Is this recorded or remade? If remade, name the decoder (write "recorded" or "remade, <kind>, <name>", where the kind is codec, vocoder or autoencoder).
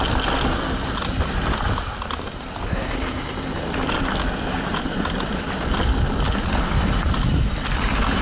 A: recorded